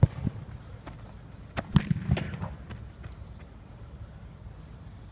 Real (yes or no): yes